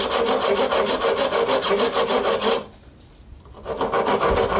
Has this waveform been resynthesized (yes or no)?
no